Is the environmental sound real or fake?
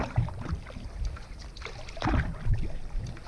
real